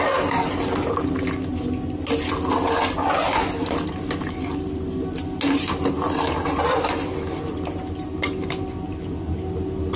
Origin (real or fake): real